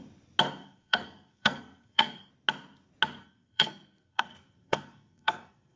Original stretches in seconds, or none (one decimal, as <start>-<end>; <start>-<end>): 0.0-0.6; 2.3-3.2